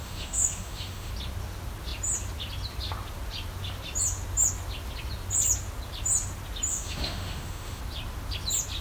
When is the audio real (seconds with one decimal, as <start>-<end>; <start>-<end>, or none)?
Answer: 1.1-6.7; 7.8-8.8